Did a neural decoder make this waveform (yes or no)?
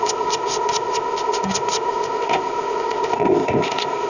yes